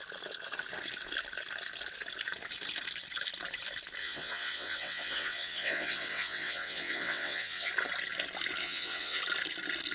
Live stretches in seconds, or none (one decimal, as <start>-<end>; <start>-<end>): 0.0-4.0; 7.7-8.6; 9.2-9.9